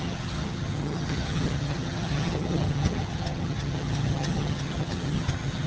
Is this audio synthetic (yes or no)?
yes